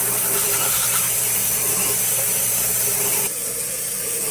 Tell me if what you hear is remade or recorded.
remade